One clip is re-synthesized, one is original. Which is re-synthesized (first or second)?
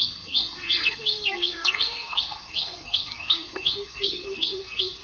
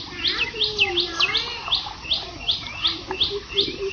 first